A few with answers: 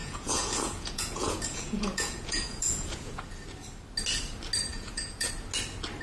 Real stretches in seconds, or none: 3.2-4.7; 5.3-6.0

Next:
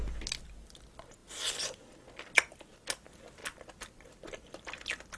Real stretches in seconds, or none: 0.0-5.2

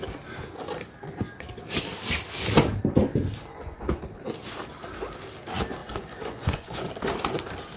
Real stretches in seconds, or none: 0.0-3.5; 4.0-5.8; 6.9-7.8

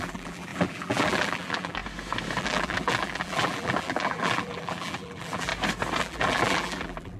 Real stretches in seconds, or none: 1.8-2.4; 5.5-6.0

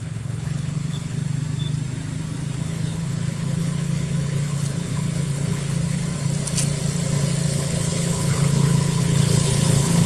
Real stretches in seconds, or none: 1.2-2.6; 6.0-7.5

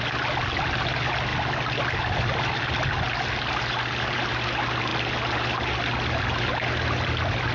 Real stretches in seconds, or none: 0.0-7.5

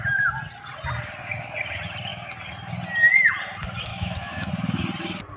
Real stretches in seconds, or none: 0.0-3.9; 4.5-5.4

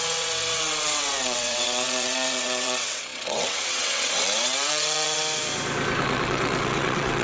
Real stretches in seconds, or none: 5.2-6.0